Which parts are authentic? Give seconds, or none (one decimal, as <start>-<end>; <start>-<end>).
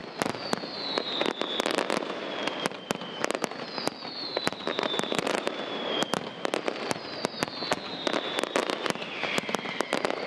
0.0-4.3; 7.4-10.3